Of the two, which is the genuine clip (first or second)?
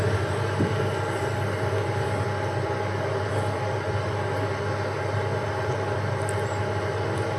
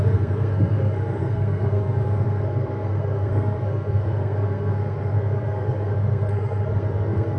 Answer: first